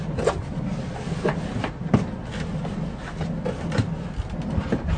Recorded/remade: recorded